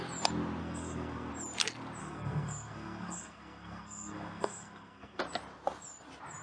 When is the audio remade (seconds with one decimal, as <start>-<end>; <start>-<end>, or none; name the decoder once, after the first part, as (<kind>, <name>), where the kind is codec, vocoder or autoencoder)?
0.6-1.3 (codec, SNAC); 2.0-5.2

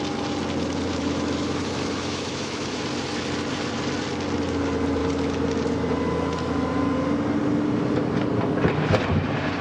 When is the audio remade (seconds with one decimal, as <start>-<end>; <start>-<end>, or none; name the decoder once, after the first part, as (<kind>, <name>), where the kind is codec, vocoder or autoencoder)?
0.9-2.8 (autoencoder, DAC-VAE)

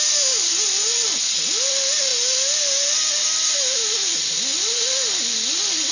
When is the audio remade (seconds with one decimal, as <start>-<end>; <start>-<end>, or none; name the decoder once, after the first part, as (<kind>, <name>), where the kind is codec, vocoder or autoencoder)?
none

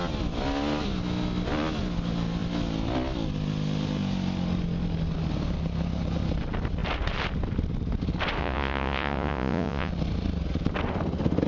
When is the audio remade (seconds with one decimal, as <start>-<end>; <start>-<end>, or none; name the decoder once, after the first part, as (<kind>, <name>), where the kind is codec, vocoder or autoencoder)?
8.4-9.9 (vocoder, Vocos)

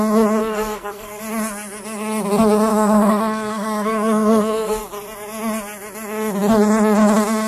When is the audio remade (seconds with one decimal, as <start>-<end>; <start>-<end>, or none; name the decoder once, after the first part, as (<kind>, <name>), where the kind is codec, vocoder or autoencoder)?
0.4-1.2 (codec, SNAC); 2.7-4.8

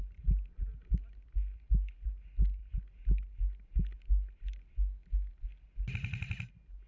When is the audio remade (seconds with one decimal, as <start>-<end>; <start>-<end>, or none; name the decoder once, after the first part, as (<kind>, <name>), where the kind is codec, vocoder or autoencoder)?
none

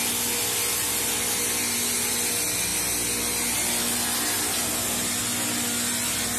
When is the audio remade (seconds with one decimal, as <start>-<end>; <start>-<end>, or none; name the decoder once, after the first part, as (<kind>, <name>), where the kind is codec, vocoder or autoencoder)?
none